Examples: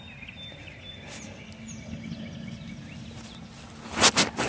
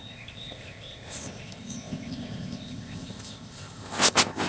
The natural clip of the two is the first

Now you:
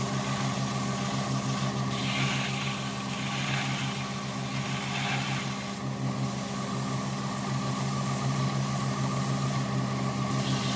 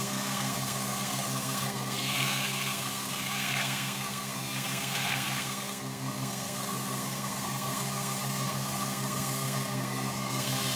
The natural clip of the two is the first